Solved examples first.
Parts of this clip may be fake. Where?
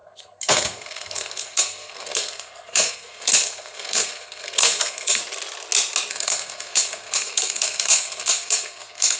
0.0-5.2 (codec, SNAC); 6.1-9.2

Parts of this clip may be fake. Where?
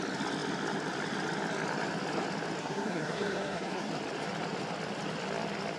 2.6-3.9 (codec, SNAC)